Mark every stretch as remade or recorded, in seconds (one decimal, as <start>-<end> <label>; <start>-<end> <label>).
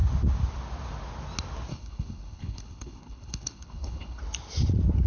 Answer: 0.0-1.7 recorded; 1.7-4.2 remade; 4.2-5.1 recorded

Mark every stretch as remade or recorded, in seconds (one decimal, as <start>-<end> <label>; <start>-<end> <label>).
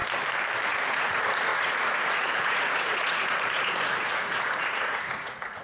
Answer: 0.0-0.7 recorded; 0.7-5.6 remade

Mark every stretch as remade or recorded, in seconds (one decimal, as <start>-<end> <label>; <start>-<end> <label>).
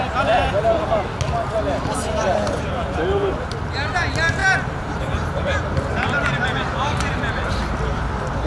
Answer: 0.0-4.4 recorded; 4.4-8.0 remade; 8.0-8.5 recorded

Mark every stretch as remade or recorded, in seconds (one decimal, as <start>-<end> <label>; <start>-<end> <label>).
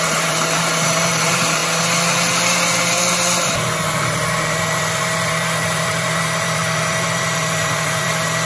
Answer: 0.0-1.6 remade; 1.6-3.9 recorded; 3.9-8.5 remade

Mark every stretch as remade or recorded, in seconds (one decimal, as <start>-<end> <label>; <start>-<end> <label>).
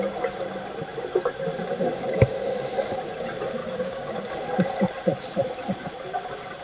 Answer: 0.0-3.6 recorded; 3.6-4.2 remade; 4.2-6.6 recorded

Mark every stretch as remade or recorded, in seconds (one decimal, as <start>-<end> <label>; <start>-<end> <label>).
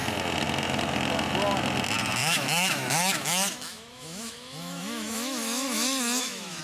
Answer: 0.0-2.2 recorded; 2.2-6.6 remade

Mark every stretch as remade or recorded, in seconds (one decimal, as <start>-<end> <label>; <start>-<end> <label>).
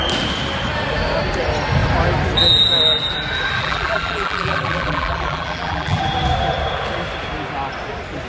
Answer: 0.0-3.6 recorded; 3.6-6.0 remade; 6.0-8.3 recorded